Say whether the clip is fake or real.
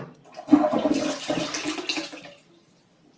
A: real